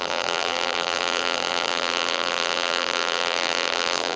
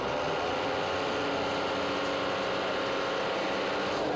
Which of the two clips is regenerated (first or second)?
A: first